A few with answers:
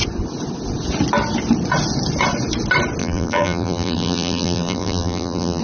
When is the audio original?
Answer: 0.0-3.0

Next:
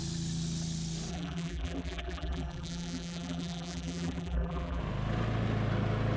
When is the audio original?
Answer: 0.0-1.1; 4.8-6.2

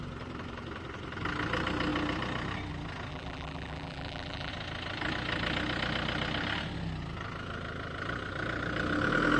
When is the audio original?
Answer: 0.0-3.1; 4.5-9.4